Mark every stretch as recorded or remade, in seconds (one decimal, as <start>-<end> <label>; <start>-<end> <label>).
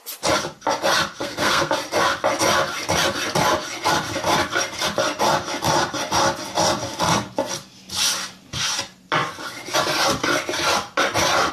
0.0-1.2 recorded; 1.2-1.7 remade; 1.7-11.5 recorded